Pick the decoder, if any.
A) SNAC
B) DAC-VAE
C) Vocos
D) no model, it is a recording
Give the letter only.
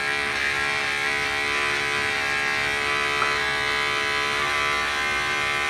D